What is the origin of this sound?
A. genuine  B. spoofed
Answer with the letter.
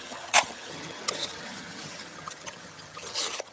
B